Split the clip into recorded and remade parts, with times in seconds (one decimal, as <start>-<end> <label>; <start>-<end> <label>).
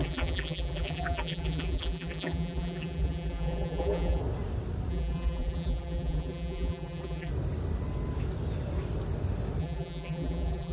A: 0.0-4.2 remade; 4.2-4.9 recorded; 4.9-7.3 remade; 7.3-9.6 recorded; 9.6-10.7 remade